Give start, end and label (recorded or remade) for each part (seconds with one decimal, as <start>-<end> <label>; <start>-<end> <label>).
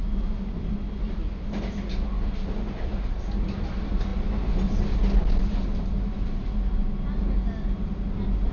0.0-8.5 recorded